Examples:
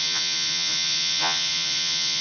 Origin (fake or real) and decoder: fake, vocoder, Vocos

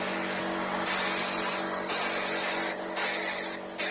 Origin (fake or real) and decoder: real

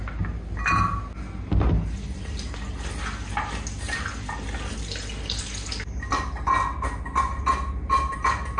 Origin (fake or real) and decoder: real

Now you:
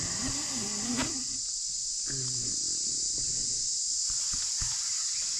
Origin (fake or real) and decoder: real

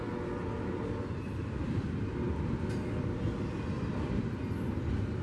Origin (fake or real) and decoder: real